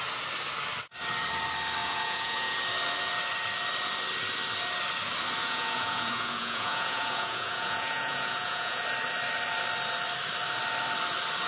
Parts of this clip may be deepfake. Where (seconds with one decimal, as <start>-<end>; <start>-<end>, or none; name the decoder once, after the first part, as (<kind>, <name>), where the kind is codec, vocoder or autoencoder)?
1.8-2.6 (vocoder, Vocos); 5.4-8.8